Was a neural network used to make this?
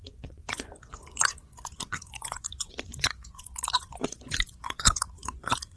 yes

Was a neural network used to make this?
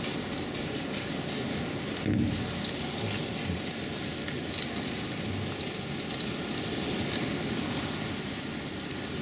no